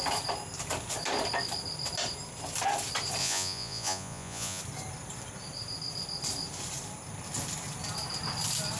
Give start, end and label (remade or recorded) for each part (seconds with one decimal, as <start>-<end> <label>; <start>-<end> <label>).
0.0-3.2 recorded; 3.2-4.6 remade; 4.6-8.8 recorded